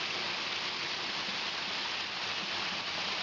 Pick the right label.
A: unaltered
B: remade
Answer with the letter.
A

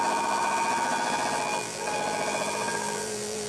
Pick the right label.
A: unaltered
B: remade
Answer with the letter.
B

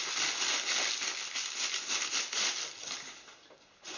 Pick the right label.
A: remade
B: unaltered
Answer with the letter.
B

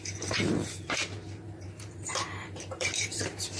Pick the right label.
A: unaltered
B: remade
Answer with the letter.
B